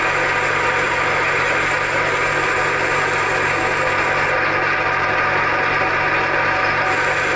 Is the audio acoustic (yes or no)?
yes